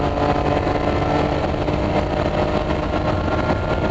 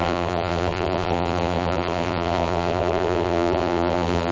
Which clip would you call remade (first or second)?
second